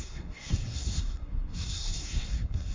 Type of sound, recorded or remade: remade